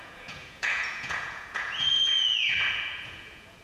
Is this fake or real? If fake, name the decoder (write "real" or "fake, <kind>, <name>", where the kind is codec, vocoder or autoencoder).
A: fake, vocoder, Vocos